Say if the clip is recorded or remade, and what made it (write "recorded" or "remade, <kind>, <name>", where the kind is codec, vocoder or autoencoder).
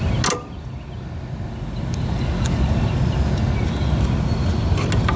recorded